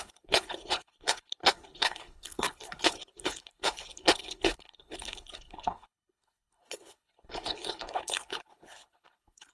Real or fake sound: fake